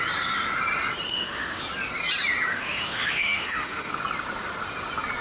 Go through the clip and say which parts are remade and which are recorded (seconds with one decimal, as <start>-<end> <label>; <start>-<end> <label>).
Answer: 0.0-1.1 recorded; 1.1-1.6 remade; 1.6-2.5 recorded; 2.5-3.9 remade; 3.9-5.2 recorded